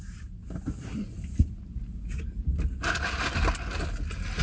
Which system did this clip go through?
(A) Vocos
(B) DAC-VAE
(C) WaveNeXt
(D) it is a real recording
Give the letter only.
D